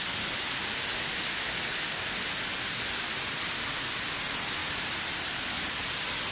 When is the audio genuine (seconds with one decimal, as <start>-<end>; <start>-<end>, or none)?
0.0-4.6; 5.3-6.3